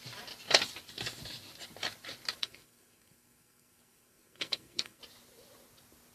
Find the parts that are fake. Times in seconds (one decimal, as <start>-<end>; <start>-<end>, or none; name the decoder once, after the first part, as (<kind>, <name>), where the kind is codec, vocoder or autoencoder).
2.4-5.0 (codec, SNAC)